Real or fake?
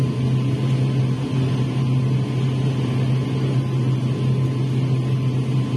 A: real